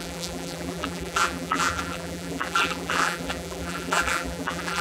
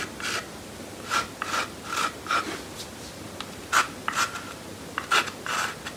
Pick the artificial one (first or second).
first